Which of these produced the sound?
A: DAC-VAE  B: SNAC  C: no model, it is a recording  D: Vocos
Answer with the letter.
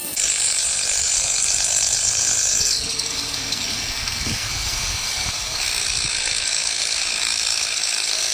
B